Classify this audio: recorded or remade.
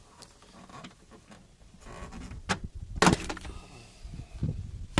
recorded